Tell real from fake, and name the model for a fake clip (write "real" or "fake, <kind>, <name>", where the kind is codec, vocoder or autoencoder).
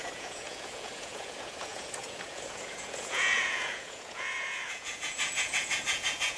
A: fake, vocoder, Vocos